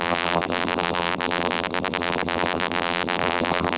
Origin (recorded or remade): remade